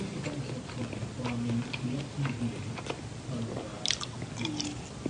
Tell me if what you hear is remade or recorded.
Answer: recorded